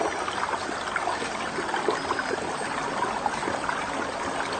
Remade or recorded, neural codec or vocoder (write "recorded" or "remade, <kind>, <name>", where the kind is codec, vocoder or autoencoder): recorded